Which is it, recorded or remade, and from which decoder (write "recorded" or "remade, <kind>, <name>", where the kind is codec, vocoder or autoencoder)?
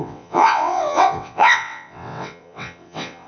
remade, vocoder, WaveNeXt